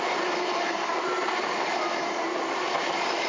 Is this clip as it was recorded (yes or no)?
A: yes